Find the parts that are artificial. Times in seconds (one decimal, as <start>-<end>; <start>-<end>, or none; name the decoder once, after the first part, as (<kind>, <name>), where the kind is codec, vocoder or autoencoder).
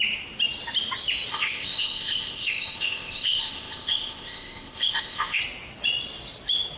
1.3-5.4 (codec, ZipCodec)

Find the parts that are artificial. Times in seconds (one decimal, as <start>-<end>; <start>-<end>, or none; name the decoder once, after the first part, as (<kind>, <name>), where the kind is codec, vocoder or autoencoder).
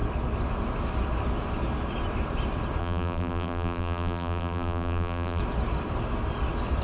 2.8-5.4 (vocoder, BigVGAN v2)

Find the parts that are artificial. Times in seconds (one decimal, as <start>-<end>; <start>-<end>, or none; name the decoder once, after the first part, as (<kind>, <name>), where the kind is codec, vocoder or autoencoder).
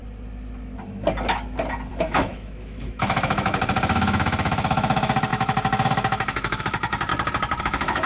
1.9-7.1 (autoencoder, DAC-VAE); 7.6-8.1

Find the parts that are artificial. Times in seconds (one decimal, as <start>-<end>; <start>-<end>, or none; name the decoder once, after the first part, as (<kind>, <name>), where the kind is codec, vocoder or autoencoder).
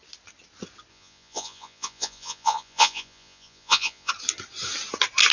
0.9-4.1 (vocoder, Vocos)